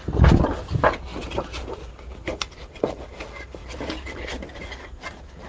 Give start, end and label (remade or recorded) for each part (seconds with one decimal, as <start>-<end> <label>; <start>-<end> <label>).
0.0-1.1 recorded; 1.1-2.9 remade; 2.9-3.6 recorded; 3.6-4.3 remade; 4.3-5.5 recorded